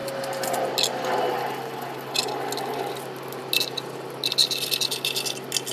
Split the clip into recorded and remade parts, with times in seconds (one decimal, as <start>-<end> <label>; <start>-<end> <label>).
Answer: 0.0-5.7 recorded